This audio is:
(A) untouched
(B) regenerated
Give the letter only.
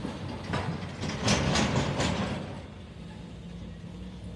A